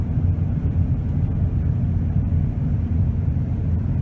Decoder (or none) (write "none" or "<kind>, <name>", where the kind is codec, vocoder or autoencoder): none